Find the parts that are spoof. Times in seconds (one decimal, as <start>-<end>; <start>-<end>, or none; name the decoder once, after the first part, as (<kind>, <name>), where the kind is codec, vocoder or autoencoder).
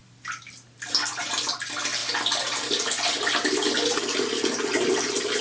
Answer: none